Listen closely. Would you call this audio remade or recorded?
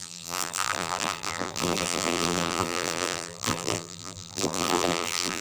remade